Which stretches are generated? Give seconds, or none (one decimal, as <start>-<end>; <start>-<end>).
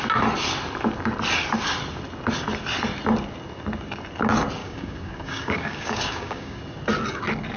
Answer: 4.6-6.6